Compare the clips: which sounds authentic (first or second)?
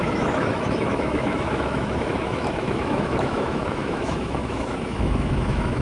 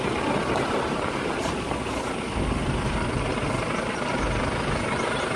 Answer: second